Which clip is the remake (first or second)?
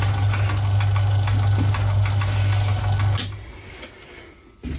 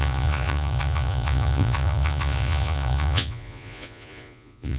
second